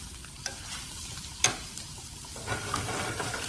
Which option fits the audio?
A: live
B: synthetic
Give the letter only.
A